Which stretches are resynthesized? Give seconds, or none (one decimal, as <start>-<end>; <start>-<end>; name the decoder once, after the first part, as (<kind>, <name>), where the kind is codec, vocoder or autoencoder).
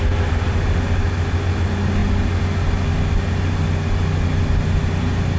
none